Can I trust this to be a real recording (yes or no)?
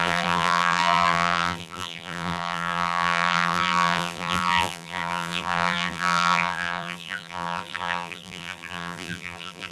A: no